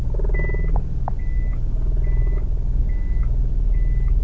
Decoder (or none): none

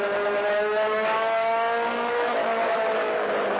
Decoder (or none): codec, DAC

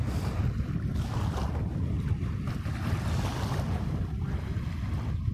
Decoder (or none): none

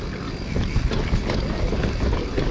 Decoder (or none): none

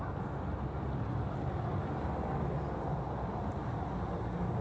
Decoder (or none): none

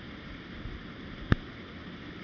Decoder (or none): none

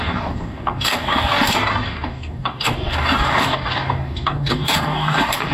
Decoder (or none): codec, DAC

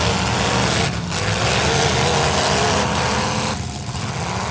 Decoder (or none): none